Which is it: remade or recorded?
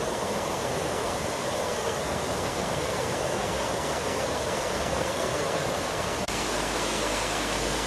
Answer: remade